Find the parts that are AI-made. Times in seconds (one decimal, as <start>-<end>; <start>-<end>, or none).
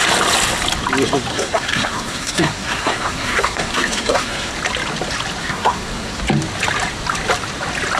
1.3-4.5; 5.4-6.2